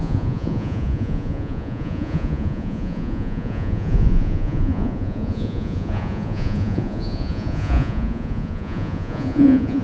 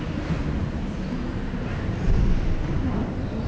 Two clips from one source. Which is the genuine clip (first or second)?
second